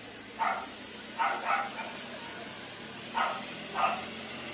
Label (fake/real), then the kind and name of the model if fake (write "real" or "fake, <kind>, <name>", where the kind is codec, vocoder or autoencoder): real